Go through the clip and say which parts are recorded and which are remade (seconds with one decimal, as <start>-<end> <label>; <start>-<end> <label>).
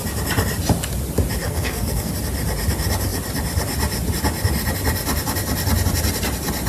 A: 0.0-1.4 recorded; 1.4-2.1 remade; 2.1-6.7 recorded